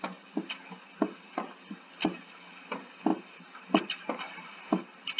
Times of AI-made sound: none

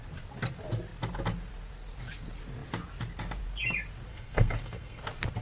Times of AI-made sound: 4.1-5.0 (codec, SNAC)

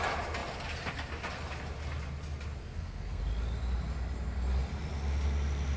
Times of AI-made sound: 2.6-3.2 (codec, SNAC)

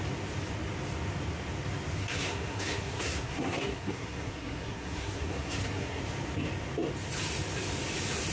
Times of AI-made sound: 2.0-6.0 (codec, SNAC)